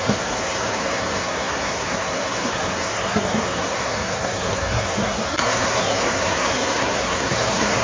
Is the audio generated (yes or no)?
yes